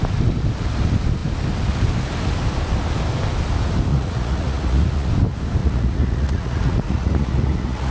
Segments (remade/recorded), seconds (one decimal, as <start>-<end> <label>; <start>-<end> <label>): 0.0-3.9 recorded; 3.9-5.1 remade; 5.1-5.6 recorded; 5.6-7.9 remade